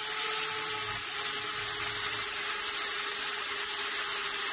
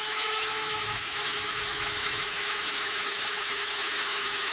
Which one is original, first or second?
first